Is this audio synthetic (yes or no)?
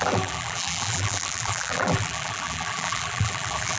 yes